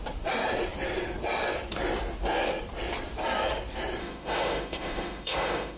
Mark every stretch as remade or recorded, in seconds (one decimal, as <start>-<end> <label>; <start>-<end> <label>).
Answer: 0.0-4.0 recorded; 4.0-5.8 remade